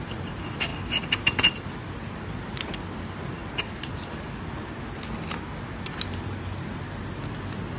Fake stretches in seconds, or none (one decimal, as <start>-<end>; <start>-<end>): none